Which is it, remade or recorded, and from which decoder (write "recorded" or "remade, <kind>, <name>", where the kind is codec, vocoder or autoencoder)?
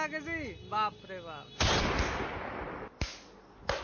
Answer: recorded